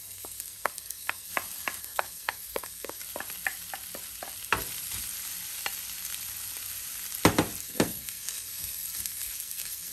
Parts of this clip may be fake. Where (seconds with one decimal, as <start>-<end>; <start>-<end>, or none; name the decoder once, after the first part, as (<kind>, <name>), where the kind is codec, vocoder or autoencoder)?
0.0-1.3 (codec, SNAC); 1.8-3.0; 7.6-9.9